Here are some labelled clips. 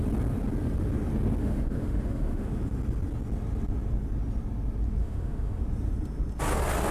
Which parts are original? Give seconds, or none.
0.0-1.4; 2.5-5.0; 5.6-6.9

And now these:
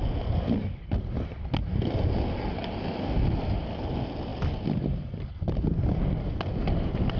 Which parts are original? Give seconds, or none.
0.0-7.2

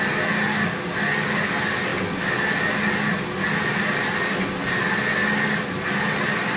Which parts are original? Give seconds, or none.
0.0-6.6

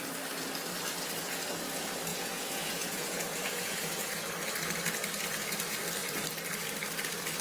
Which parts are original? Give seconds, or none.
0.0-2.1; 4.1-7.4

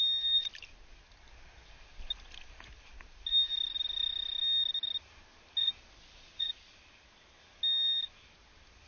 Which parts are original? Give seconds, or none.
0.0-5.6; 6.5-8.9

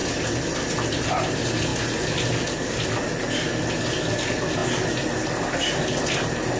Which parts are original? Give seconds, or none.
0.0-6.6

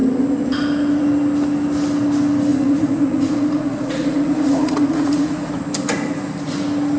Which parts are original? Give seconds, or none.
0.0-2.5; 5.6-7.0